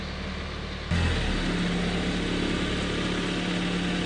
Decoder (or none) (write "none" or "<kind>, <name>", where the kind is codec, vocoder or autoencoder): none